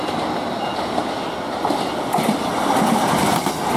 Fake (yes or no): no